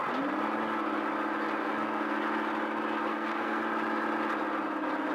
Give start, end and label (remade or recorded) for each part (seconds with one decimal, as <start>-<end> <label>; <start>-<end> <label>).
0.0-1.6 recorded; 1.6-2.2 remade; 2.2-3.1 recorded; 3.1-3.6 remade; 3.6-5.1 recorded